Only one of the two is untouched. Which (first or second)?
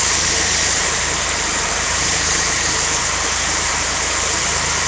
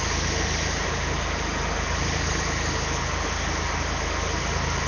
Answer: second